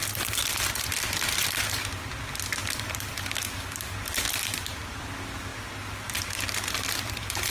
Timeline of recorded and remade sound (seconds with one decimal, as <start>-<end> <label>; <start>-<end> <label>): 0.0-7.5 recorded